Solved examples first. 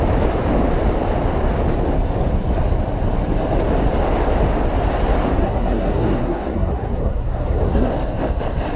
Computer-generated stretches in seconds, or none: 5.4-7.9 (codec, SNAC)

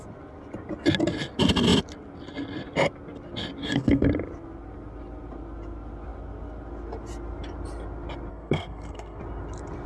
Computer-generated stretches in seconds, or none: 3.6-4.1 (codec, SNAC); 8.3-9.2

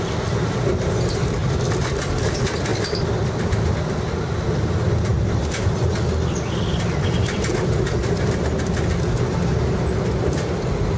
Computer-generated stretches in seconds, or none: none

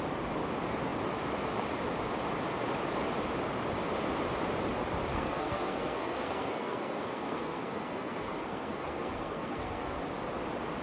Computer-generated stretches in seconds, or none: 5.1-10.0 (codec, SNAC)

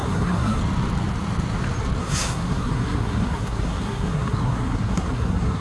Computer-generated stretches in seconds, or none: 0.0-0.6 (codec, SNAC); 2.0-5.6